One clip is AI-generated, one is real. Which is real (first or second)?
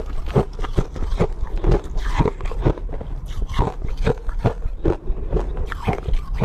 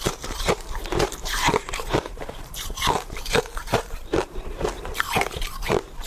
first